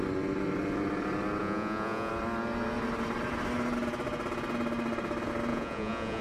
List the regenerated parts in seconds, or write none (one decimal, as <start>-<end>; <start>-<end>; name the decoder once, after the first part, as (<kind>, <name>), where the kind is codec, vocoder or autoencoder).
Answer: 1.4-2.1 (vocoder, Vocos); 5.5-6.2